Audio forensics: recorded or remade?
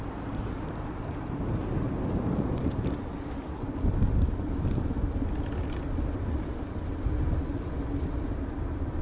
recorded